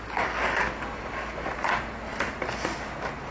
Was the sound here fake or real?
real